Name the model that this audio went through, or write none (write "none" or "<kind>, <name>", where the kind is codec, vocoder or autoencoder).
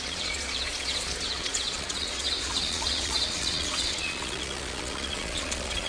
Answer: vocoder, Vocos